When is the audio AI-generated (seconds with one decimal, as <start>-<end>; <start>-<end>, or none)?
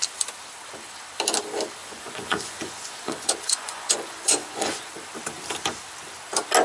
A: 1.8-4.9